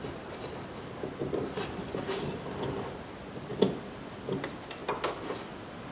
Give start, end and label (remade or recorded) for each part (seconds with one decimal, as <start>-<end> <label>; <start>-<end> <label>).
0.0-5.9 recorded